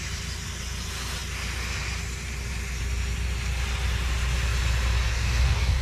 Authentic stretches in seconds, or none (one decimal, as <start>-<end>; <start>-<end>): 0.0-5.1

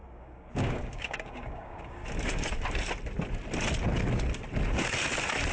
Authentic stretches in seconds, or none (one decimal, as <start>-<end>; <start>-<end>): 2.0-5.5